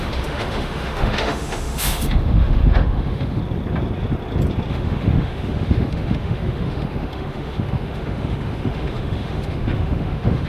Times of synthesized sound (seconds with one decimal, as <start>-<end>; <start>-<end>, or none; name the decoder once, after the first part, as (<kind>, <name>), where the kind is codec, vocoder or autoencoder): 0.0-3.4 (autoencoder, DAC-VAE); 4.7-10.5